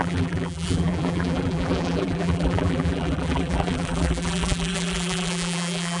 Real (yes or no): no